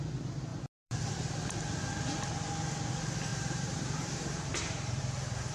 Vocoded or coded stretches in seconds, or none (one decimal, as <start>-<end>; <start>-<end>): 0.5-1.1; 3.3-5.0